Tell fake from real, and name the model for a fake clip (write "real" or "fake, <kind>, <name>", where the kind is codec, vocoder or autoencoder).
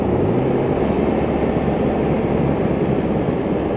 real